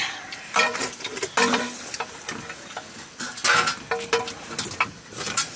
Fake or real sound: real